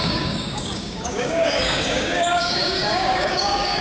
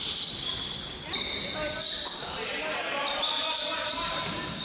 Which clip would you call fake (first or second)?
first